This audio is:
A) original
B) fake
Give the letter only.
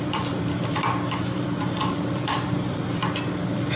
B